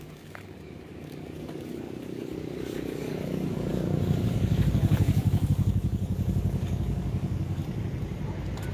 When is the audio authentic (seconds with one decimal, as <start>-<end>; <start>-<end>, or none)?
7.6-8.7